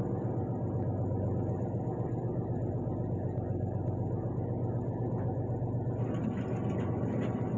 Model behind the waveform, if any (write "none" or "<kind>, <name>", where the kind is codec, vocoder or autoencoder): none